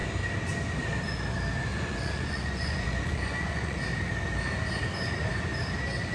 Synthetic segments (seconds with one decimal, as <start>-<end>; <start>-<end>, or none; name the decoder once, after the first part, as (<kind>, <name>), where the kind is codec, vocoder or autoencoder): 1.7-3.8 (vocoder, Vocos)